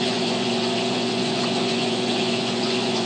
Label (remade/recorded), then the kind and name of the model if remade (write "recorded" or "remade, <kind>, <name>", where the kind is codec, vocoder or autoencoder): remade, vocoder, Vocos